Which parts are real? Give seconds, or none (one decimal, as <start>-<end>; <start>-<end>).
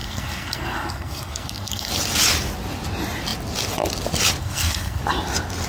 1.9-4.4; 5.0-5.7